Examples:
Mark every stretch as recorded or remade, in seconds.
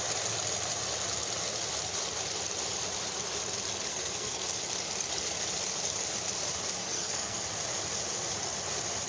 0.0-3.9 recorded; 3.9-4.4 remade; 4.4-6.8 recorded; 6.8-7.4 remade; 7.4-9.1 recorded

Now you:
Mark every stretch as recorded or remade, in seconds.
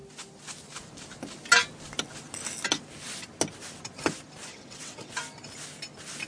0.0-4.5 recorded; 4.5-5.1 remade; 5.1-6.3 recorded